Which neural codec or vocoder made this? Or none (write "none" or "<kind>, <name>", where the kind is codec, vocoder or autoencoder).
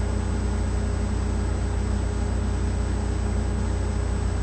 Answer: none